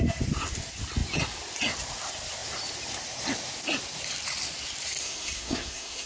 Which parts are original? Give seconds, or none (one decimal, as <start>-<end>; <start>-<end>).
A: 0.0-5.0